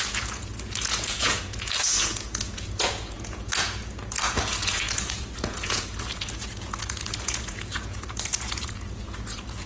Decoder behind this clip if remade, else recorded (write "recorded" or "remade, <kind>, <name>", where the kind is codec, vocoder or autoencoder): remade, vocoder, Vocos